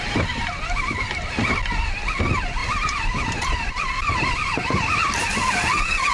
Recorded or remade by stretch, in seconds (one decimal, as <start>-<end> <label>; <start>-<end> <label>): 0.0-2.6 recorded; 2.6-3.7 remade; 3.7-4.4 recorded; 4.4-5.3 remade; 5.3-6.1 recorded